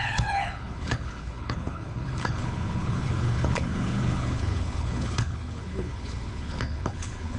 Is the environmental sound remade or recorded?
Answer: remade